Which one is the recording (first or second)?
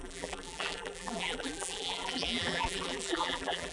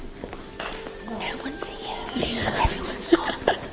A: second